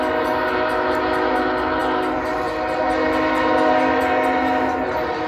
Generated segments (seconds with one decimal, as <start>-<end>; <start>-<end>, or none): none